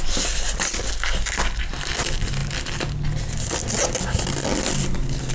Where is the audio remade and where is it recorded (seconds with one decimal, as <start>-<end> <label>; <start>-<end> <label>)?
0.0-5.3 recorded